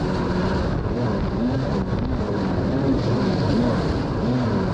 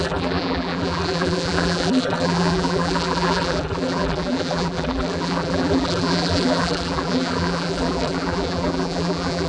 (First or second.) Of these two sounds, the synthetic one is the second